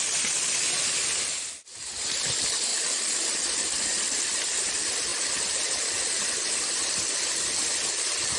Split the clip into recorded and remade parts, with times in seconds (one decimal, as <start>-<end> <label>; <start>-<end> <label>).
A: 0.0-8.4 recorded